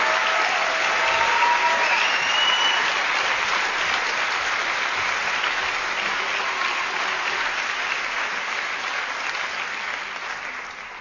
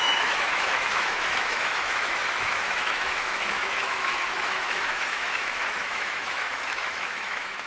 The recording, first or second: first